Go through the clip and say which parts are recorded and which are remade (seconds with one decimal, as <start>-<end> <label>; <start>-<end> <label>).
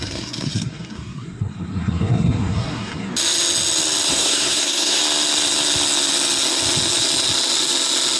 0.0-3.1 remade; 3.1-4.1 recorded; 4.1-5.0 remade; 5.0-8.2 recorded